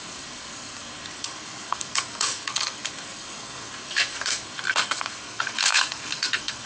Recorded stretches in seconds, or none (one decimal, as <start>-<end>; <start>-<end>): none